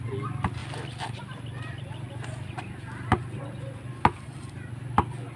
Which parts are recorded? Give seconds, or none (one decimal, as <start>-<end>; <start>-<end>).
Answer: 0.0-5.4